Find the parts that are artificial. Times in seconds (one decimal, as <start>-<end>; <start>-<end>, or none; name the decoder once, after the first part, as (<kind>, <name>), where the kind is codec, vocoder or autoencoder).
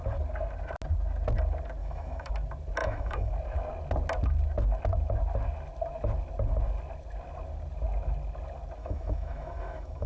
1.8-2.3 (autoencoder, DAC-VAE); 2.8-3.3; 8.8-10.1